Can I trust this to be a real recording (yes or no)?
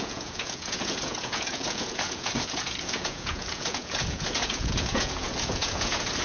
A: no